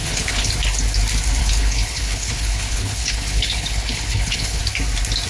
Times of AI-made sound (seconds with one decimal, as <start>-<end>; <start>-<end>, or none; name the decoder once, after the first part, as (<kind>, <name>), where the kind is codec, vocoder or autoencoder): 0.0-0.5 (codec, HILCodec); 1.4-4.6